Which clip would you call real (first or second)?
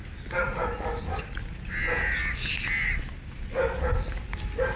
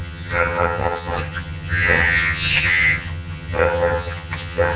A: first